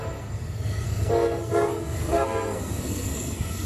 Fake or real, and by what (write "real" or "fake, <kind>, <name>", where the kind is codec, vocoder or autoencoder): fake, codec, SNAC